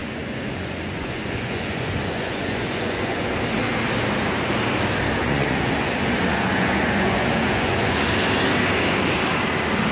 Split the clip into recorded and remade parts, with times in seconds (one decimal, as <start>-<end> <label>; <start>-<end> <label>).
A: 0.0-3.3 remade; 3.3-5.2 recorded; 5.2-8.1 remade; 8.1-9.9 recorded